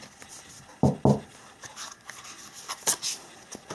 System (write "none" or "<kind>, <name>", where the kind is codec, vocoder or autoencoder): none